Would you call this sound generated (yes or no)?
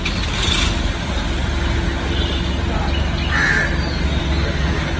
no